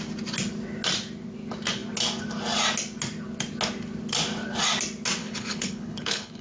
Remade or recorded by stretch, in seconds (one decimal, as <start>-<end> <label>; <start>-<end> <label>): 0.0-5.2 recorded; 5.2-6.4 remade